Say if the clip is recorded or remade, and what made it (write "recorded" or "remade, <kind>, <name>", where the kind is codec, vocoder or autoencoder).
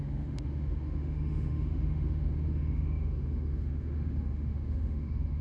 remade, autoencoder, DAC-VAE